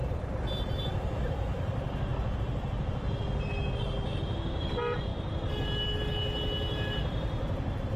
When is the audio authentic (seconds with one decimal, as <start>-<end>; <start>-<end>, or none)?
0.0-8.0